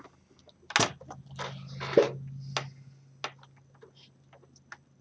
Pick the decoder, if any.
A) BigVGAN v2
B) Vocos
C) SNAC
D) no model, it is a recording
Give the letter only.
D